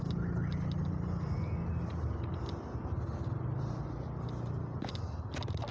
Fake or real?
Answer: real